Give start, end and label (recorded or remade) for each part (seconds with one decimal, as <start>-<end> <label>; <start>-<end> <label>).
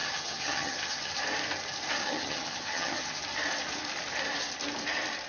0.0-1.1 remade; 1.1-2.0 recorded; 2.0-3.2 remade; 3.2-5.3 recorded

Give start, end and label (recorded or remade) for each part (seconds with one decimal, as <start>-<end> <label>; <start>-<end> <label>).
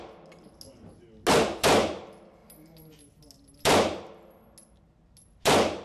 0.0-5.8 recorded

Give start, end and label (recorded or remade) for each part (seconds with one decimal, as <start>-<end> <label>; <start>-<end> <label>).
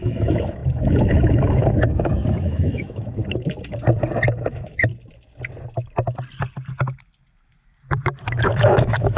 0.0-3.2 remade; 3.2-4.5 recorded; 4.5-4.9 remade; 4.9-8.4 recorded; 8.4-9.2 remade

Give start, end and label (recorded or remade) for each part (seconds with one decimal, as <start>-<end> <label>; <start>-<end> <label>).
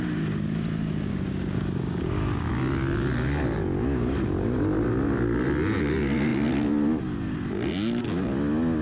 0.0-1.1 recorded; 1.1-2.5 remade; 2.5-8.8 recorded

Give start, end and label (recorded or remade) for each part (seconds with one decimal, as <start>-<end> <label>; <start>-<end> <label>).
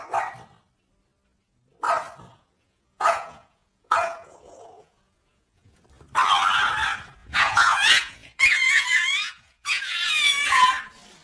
0.0-2.3 recorded; 2.3-5.8 remade; 5.8-7.2 recorded; 7.2-10.7 remade; 10.7-11.2 recorded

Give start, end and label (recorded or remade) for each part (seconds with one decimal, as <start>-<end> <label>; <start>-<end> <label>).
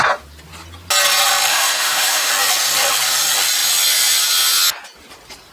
0.0-1.5 recorded; 1.5-2.3 remade; 2.3-5.5 recorded